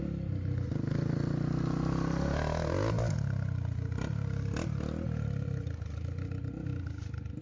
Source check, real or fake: real